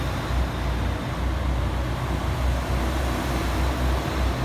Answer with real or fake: real